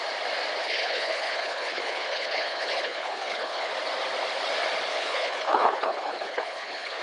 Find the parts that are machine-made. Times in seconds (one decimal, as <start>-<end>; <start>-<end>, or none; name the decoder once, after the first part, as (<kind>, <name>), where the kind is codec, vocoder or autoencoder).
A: 0.6-3.7 (codec, HILCodec); 4.9-7.0